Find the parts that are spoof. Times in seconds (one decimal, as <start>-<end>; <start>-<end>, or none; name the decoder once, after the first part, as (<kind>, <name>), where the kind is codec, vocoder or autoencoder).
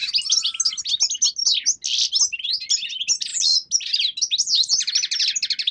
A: none